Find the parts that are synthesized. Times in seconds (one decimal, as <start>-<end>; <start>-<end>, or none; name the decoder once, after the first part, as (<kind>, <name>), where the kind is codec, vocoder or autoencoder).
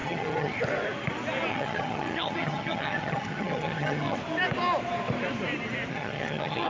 0.0-0.6 (vocoder, HiFi-GAN); 1.5-4.2; 5.9-6.7